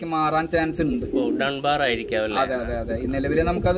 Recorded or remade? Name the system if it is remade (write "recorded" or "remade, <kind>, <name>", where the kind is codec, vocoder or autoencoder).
recorded